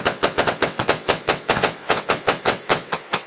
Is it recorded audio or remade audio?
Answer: remade